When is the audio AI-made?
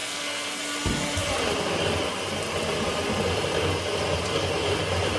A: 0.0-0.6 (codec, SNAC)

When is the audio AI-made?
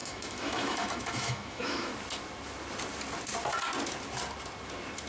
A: 0.0-1.9 (autoencoder, DAC-VAE)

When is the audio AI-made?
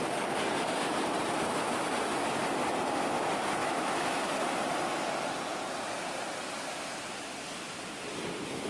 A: 3.6-4.4 (autoencoder, DAC-VAE)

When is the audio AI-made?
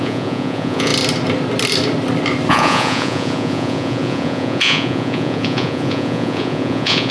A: 0.0-0.9 (vocoder, Vocos); 2.5-7.1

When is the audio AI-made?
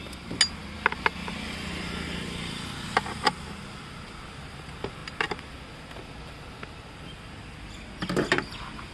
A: none